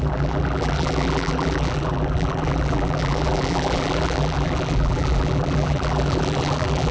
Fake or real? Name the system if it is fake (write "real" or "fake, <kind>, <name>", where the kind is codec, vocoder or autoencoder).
fake, vocoder, BigVGAN v2